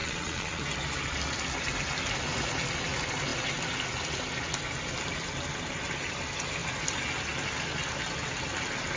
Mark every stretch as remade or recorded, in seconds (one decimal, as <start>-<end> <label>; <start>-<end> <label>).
0.0-0.6 remade; 0.6-9.0 recorded